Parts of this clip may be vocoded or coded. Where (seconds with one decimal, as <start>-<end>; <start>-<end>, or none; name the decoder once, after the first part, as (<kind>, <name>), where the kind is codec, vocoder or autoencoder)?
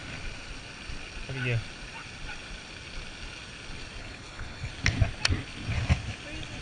4.0-4.7 (codec, HILCodec)